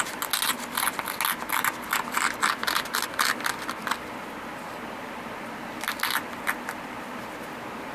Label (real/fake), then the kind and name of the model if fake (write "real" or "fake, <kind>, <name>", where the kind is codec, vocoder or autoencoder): real